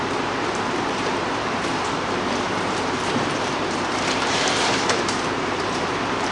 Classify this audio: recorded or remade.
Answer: remade